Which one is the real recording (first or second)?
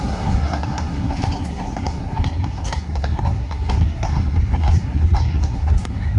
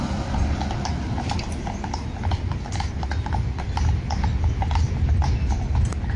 second